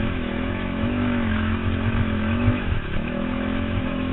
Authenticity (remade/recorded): remade